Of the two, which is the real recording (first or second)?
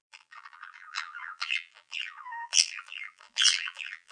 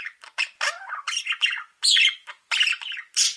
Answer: second